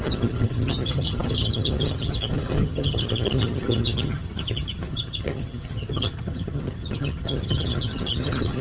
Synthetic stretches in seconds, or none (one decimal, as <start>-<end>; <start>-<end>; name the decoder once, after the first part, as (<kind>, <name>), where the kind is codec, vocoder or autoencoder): 0.0-8.6 (vocoder, HiFi-GAN)